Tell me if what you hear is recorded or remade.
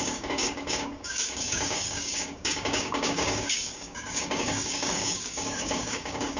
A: remade